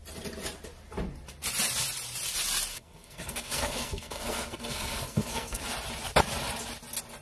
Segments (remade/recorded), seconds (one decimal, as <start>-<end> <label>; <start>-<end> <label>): 0.0-2.7 recorded; 2.7-5.6 remade; 5.6-7.2 recorded